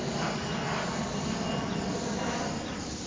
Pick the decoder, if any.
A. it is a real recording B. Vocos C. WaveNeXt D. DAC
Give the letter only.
A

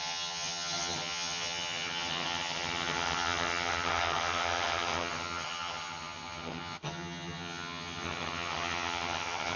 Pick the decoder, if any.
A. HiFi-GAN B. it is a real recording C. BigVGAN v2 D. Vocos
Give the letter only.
A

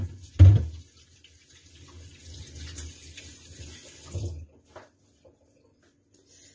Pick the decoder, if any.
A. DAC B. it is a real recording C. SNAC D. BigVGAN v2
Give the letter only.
B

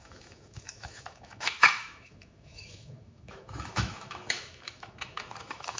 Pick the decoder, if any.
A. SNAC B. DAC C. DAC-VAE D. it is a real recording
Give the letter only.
C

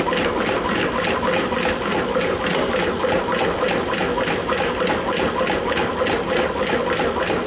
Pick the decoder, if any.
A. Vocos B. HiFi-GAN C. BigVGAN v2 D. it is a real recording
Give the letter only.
D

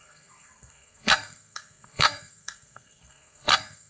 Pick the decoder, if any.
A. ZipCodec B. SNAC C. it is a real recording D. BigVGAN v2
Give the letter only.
B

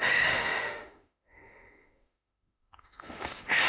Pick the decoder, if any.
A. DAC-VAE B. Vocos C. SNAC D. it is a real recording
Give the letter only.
A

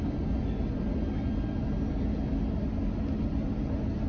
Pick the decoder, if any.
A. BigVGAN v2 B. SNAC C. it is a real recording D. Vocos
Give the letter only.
C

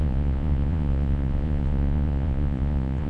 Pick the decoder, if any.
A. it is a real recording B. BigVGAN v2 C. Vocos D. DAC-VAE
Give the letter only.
C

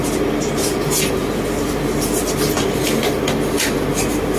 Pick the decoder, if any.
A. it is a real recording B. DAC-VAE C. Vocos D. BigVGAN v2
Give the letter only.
A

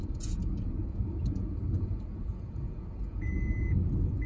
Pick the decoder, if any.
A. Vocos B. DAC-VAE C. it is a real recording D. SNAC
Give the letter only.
A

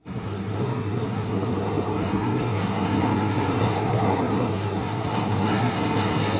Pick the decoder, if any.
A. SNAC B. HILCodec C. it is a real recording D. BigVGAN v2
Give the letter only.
A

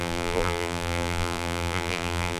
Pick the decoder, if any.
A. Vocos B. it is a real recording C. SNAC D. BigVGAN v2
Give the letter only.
D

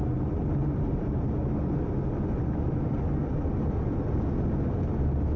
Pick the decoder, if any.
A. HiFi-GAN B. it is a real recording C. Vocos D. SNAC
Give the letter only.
B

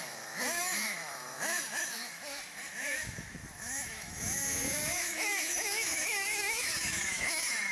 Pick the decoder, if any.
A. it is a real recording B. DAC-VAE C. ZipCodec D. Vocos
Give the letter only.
B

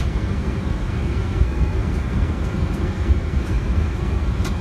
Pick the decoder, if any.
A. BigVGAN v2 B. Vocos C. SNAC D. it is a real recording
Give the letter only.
C